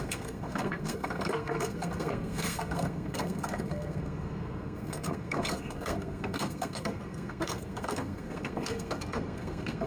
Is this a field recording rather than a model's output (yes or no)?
no